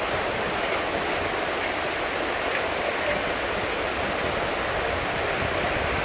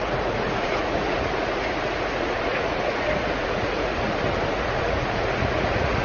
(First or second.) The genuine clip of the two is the first